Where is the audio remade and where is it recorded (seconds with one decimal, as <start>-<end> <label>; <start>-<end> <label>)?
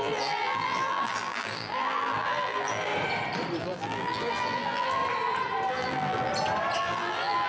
0.0-2.9 remade; 2.9-3.6 recorded; 3.6-5.0 remade; 5.0-5.7 recorded; 5.7-6.3 remade; 6.3-6.8 recorded; 6.8-7.5 remade